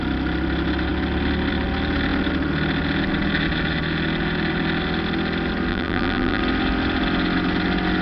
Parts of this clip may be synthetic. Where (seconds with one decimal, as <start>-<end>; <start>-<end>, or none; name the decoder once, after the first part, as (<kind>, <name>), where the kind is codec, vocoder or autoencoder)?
5.7-6.4 (vocoder, BigVGAN v2)

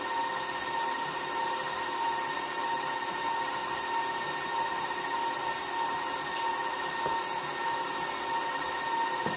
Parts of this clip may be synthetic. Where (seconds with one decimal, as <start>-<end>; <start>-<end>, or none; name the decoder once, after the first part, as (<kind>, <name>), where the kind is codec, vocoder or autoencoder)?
none

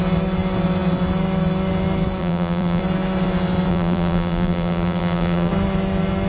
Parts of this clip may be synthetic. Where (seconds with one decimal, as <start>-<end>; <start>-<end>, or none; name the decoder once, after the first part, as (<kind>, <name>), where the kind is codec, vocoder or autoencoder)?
2.2-2.8 (vocoder, BigVGAN v2); 3.7-5.5

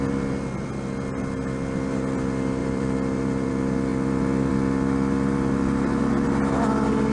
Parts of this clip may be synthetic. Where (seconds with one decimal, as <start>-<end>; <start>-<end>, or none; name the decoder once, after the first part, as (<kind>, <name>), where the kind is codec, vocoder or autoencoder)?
2.6-3.5 (vocoder, BigVGAN v2)

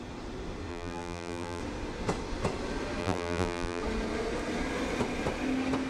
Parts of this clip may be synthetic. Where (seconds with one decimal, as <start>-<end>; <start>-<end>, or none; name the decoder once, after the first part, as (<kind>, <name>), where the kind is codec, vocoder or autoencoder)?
0.7-1.6 (vocoder, BigVGAN v2); 3.0-3.8

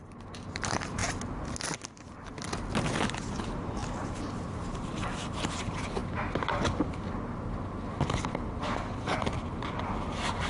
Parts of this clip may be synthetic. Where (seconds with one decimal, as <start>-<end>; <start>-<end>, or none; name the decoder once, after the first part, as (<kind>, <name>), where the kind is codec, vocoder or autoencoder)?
0.0-1.0 (vocoder, BigVGAN v2); 2.7-6.0; 10.0-10.5

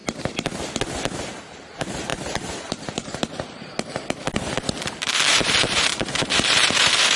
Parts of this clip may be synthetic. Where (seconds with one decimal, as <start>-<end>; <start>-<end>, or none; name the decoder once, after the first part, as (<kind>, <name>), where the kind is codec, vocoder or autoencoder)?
1.4-3.7 (vocoder, BigVGAN v2); 5.0-7.2

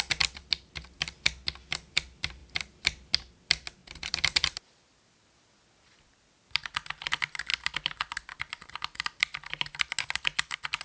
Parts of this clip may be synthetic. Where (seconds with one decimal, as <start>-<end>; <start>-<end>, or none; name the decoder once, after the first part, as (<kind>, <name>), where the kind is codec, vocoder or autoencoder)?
3.8-4.6 (vocoder, BigVGAN v2)